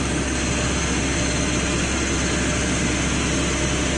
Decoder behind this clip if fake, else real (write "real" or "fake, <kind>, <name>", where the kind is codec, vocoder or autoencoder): real